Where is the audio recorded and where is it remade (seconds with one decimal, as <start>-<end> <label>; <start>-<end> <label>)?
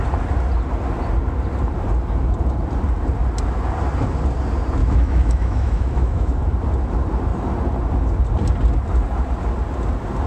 0.0-4.8 recorded; 4.8-6.4 remade; 6.4-10.3 recorded